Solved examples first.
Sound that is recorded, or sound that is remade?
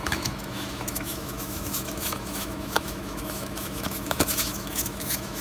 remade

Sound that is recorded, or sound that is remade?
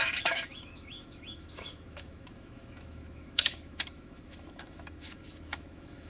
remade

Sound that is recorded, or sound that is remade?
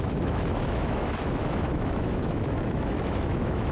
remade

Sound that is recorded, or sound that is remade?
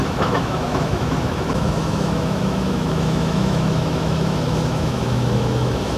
remade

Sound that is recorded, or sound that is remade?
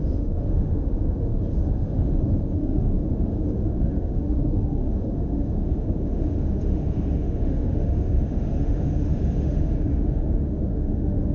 remade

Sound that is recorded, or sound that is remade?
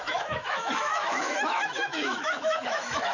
remade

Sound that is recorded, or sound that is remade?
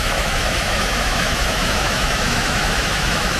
remade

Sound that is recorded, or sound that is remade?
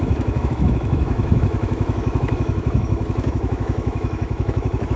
remade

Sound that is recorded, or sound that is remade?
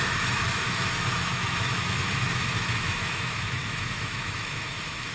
remade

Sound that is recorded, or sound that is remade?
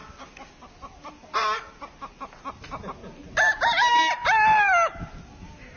recorded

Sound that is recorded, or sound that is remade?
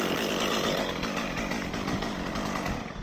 recorded